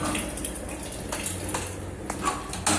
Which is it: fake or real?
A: real